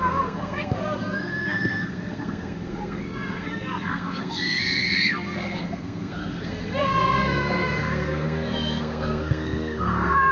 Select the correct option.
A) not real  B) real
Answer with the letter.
A